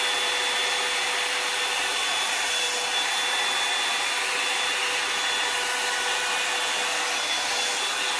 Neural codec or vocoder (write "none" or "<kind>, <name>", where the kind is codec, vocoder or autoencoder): none